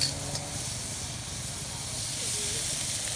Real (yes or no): yes